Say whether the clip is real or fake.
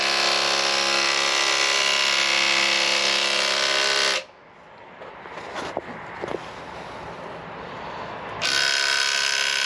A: real